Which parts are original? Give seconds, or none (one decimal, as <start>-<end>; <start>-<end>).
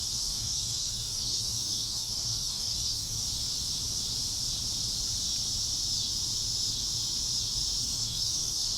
3.2-7.8